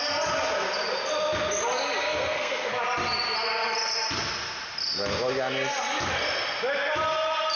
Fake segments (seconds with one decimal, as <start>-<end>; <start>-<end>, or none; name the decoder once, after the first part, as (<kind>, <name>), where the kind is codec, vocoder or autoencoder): 2.0-2.7 (codec, SNAC)